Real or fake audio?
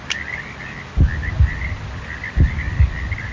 real